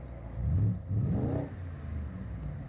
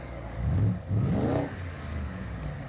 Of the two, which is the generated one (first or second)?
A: second